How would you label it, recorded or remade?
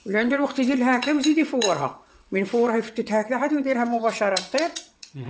remade